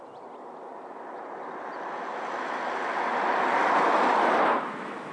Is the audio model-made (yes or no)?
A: no